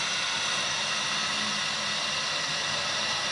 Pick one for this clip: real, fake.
real